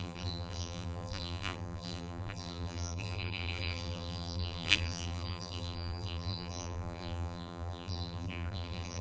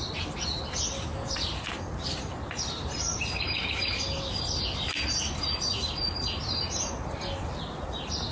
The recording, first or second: second